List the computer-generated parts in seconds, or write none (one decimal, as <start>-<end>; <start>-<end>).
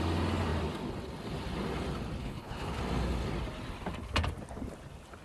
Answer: 2.2-2.8